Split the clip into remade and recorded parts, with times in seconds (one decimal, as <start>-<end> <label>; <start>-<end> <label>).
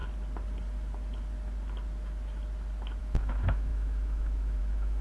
0.0-3.0 recorded; 3.0-5.0 remade